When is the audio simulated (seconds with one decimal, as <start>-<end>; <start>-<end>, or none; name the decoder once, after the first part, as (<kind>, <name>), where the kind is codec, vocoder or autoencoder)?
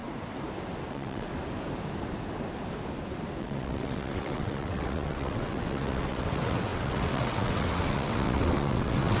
0.9-1.3 (vocoder, WaveNeXt); 3.4-9.2